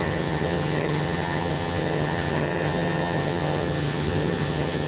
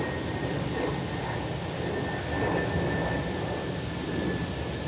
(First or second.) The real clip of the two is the second